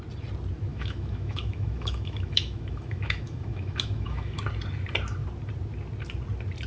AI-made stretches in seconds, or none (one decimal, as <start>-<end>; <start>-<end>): 0.7-4.4